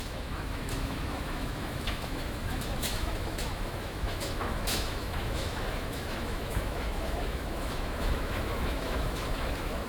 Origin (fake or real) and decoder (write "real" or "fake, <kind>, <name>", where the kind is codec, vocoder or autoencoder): fake, autoencoder, DAC-VAE